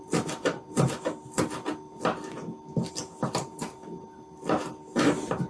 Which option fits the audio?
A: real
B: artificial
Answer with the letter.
A